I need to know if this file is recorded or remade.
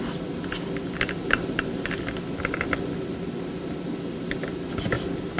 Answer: recorded